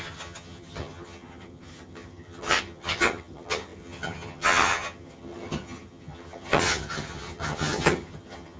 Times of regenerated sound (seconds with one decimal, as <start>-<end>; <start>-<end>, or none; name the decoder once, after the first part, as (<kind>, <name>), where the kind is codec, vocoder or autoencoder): 0.0-8.6 (vocoder, HiFi-GAN)